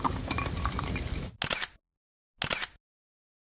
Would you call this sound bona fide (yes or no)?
yes